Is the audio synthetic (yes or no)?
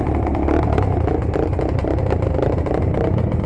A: no